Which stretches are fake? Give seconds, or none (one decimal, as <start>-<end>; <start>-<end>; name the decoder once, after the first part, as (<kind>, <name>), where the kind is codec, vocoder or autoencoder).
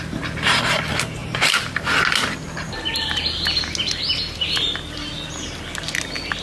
1.2-1.8 (vocoder, BigVGAN v2)